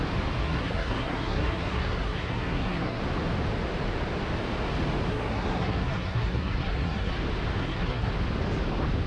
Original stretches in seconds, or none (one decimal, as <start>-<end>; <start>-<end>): 0.0-0.4; 3.0-5.1; 7.1-7.6; 8.1-9.1